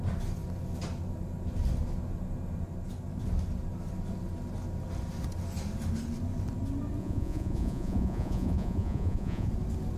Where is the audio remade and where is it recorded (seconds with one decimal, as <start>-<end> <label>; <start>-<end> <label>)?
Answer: 0.0-7.0 recorded; 7.0-9.5 remade; 9.5-10.0 recorded